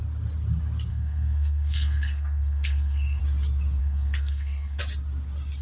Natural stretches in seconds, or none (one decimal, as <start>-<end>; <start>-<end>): 0.0-0.9; 3.2-3.8; 4.8-5.6